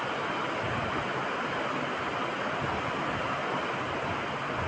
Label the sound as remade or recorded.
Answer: recorded